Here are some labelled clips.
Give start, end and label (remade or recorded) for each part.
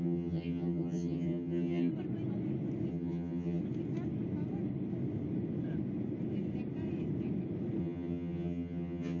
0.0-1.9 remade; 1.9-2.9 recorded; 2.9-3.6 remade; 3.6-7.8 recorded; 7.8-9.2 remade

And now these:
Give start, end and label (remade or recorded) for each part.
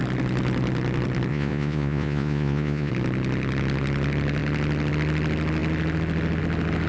0.0-1.3 recorded; 1.3-2.9 remade; 2.9-6.9 recorded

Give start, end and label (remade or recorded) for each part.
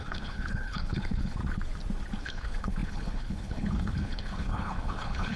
0.0-1.4 remade; 1.4-2.2 recorded; 2.2-5.4 remade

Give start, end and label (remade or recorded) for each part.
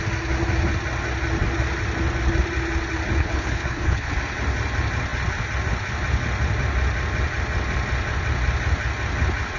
0.0-3.2 recorded; 3.2-4.1 remade; 4.1-9.6 recorded